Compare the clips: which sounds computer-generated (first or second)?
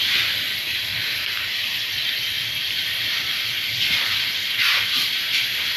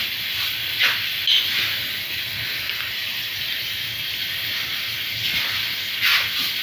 first